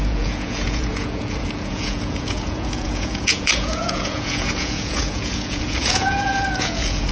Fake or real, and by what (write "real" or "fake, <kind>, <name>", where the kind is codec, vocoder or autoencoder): fake, vocoder, Vocos